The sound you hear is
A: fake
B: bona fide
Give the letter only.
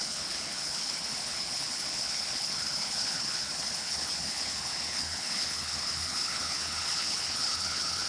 A